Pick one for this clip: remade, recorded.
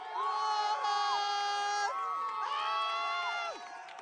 recorded